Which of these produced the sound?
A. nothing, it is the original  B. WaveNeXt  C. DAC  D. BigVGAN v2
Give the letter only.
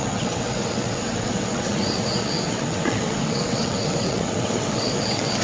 B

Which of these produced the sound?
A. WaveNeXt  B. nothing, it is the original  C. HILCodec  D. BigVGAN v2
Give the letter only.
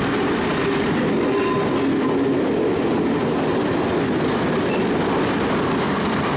B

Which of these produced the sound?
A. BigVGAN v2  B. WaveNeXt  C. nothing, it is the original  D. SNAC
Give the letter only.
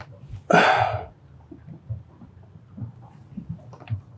C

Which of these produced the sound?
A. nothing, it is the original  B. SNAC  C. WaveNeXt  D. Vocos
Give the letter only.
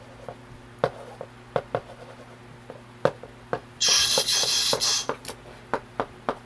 A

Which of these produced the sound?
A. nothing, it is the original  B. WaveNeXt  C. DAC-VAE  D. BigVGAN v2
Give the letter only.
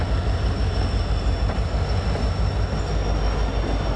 A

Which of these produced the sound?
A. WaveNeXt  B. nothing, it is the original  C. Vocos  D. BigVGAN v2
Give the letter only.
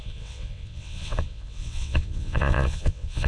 A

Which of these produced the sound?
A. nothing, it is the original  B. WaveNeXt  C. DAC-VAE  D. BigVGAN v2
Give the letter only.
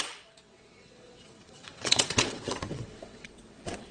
B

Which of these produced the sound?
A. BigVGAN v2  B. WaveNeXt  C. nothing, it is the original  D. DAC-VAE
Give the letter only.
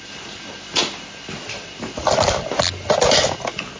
C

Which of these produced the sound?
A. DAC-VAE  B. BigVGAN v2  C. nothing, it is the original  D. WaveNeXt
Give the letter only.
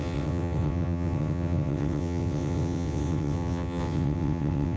D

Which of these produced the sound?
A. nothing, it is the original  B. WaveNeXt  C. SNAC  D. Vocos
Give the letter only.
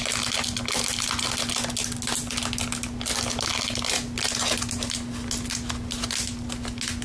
A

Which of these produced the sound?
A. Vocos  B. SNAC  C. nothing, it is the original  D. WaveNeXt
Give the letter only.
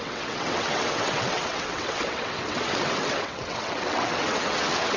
D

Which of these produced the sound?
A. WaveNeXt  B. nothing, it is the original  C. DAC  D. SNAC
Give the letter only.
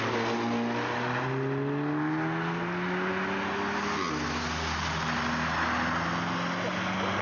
B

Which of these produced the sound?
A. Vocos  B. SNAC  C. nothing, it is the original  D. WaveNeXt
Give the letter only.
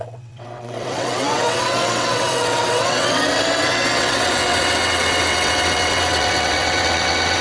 D